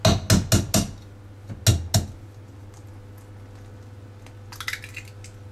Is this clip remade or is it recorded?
recorded